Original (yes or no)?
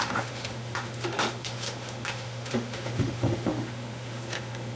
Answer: no